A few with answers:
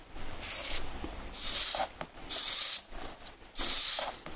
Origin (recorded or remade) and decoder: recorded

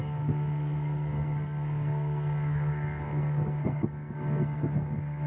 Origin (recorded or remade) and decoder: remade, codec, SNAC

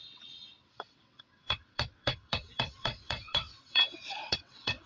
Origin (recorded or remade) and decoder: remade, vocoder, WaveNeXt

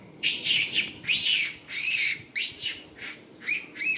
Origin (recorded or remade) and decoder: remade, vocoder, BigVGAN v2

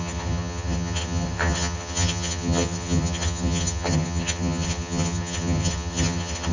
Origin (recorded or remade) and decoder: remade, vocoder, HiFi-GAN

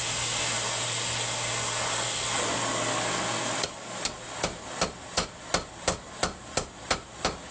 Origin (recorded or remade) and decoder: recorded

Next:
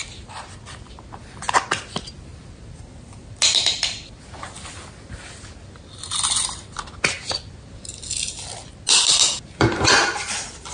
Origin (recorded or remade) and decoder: recorded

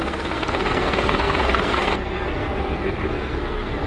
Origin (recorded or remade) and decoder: remade, codec, SNAC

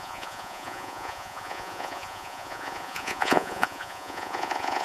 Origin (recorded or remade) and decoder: remade, vocoder, Vocos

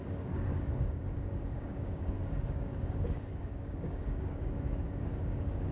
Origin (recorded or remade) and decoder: remade, codec, DAC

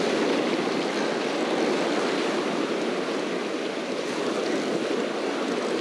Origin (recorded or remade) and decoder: recorded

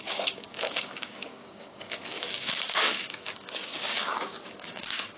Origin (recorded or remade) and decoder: remade, codec, DAC